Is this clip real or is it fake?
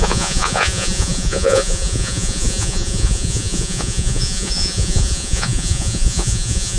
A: fake